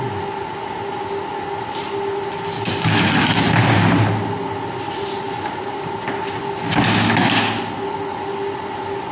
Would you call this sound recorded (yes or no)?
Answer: yes